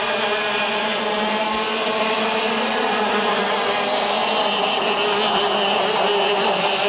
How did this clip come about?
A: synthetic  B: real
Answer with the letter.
A